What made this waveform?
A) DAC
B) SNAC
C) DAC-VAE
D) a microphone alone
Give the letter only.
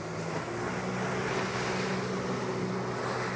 D